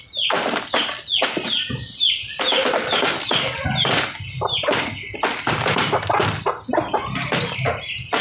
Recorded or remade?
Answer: recorded